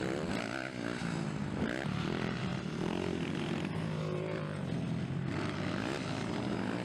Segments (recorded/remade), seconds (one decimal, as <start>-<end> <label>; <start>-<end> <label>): 0.0-6.8 recorded

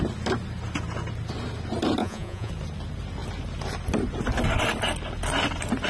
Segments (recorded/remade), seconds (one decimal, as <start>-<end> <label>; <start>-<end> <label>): 0.0-2.0 recorded; 2.0-2.5 remade; 2.5-5.9 recorded

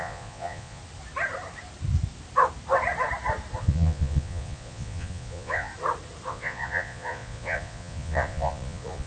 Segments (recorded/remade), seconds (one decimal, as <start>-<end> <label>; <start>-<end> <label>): 0.0-0.8 remade; 0.8-3.6 recorded; 3.6-5.7 remade; 5.7-6.3 recorded; 6.3-9.1 remade

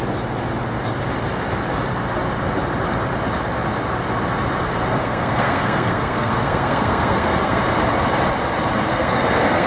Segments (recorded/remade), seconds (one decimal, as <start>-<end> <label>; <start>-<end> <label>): 0.0-5.0 recorded; 5.0-7.6 remade; 7.6-8.9 recorded; 8.9-9.7 remade